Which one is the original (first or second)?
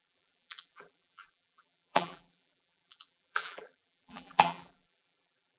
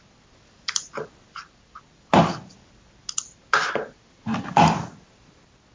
second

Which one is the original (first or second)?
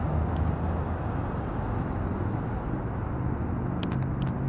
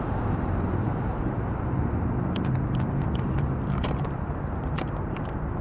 first